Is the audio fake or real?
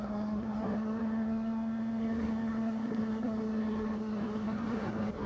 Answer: fake